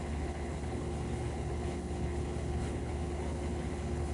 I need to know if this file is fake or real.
fake